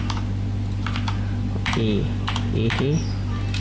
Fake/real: real